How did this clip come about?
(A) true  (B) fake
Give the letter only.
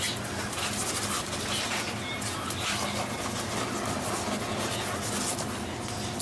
A